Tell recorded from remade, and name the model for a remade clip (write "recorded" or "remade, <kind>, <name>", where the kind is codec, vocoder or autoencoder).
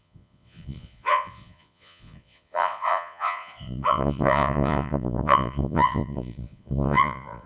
remade, vocoder, Vocos